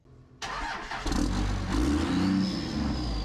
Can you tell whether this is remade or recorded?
recorded